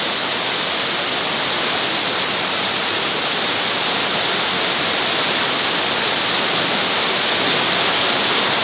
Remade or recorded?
recorded